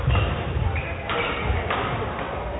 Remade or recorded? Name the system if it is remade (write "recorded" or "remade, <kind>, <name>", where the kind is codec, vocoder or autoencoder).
recorded